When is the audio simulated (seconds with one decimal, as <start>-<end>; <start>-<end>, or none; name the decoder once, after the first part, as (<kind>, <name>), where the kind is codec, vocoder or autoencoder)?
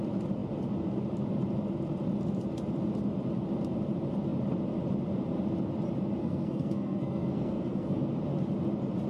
6.2-8.1 (codec, SNAC)